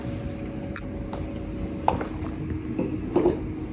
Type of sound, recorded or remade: recorded